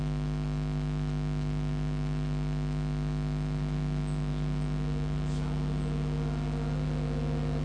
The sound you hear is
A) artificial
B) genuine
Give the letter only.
B